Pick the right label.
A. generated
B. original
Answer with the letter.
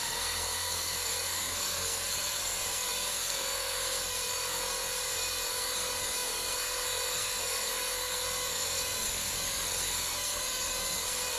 A